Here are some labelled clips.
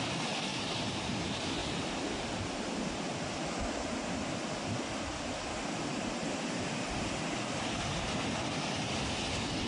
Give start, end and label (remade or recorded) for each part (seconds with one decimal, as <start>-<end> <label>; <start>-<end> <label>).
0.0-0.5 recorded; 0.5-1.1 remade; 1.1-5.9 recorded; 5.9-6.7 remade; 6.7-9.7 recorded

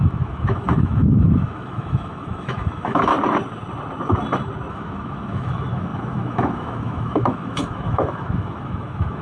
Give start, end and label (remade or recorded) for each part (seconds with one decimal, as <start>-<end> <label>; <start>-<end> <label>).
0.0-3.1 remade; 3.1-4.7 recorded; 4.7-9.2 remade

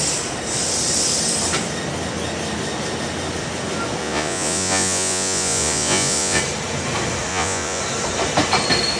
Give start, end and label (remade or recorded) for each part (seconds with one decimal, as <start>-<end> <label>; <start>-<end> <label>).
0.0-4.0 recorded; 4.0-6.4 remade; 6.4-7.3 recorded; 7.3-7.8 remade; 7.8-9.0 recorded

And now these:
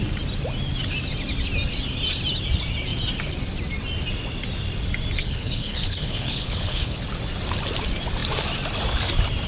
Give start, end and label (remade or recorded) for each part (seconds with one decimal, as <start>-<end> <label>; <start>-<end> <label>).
0.0-5.2 recorded; 5.2-7.0 remade; 7.0-9.5 recorded

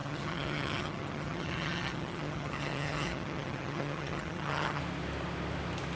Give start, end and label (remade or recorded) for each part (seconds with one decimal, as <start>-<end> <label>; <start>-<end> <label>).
0.0-4.8 remade; 4.8-6.0 recorded

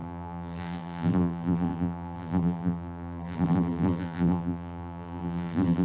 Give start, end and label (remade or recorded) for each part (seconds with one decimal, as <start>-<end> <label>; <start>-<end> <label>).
0.0-5.8 remade

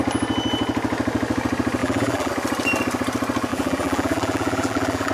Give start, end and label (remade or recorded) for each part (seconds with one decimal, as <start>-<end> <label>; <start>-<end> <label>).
0.0-1.8 recorded; 1.8-2.3 remade; 2.3-3.5 recorded; 3.5-5.1 remade